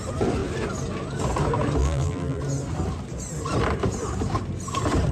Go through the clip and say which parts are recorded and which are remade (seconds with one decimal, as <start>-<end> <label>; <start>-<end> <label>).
0.0-1.8 recorded; 1.8-2.4 remade; 2.4-5.1 recorded